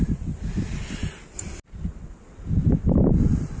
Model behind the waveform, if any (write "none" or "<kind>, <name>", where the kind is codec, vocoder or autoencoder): none